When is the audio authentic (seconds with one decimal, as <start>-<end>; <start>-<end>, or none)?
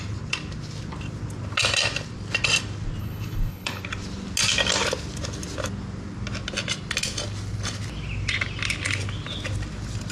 0.0-3.0; 3.8-10.1